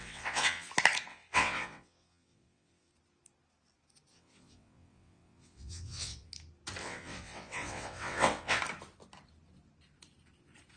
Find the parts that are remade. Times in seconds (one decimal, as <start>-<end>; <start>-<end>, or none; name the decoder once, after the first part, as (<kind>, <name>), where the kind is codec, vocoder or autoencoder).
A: 0.0-0.7 (vocoder, WaveNeXt); 1.1-2.9; 4.1-6.3; 6.8-8.6